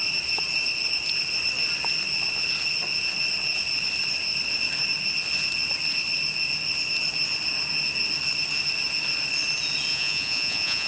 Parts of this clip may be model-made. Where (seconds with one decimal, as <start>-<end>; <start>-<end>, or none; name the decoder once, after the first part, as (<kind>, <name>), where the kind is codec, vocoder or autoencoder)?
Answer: 9.9-10.9 (vocoder, Vocos)